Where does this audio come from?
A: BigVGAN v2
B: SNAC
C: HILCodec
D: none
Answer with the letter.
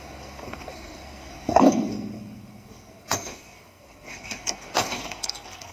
B